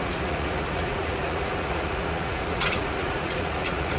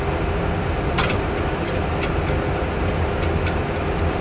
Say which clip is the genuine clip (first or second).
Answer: second